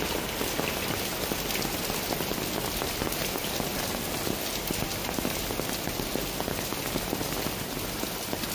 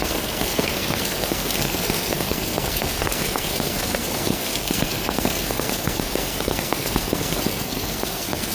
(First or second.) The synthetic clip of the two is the second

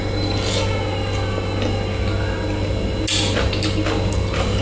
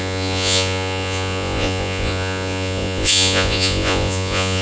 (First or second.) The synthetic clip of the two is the second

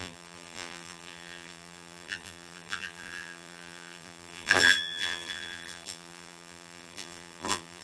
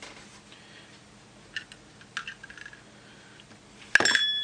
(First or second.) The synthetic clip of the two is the first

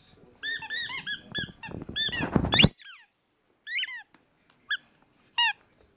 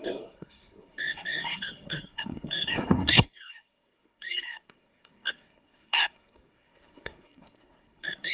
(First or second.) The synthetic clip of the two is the second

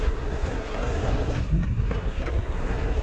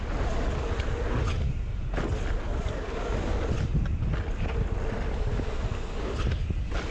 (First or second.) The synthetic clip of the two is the first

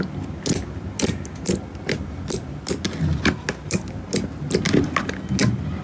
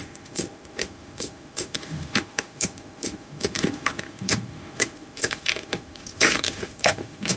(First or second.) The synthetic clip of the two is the second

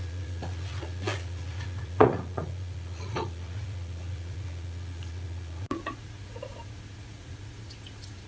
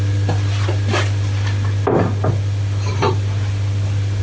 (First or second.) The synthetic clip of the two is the first